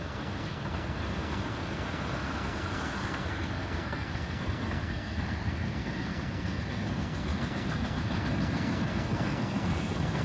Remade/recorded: remade